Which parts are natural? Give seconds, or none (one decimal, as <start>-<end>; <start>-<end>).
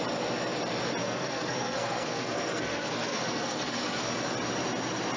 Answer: 0.0-1.0; 4.1-5.2